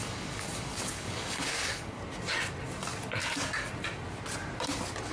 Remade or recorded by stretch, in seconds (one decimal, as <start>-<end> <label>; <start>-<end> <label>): 0.0-2.0 remade; 2.0-3.2 recorded; 3.2-3.7 remade; 3.7-5.1 recorded